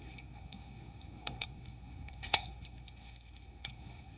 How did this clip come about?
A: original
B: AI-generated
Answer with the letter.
B